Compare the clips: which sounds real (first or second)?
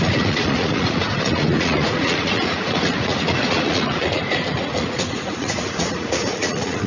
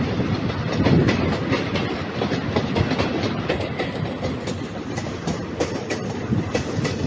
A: second